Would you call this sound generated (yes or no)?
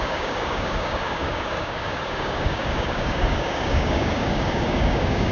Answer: yes